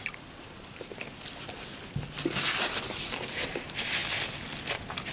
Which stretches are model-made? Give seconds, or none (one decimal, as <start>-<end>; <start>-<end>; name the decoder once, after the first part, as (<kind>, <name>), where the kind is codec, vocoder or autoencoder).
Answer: none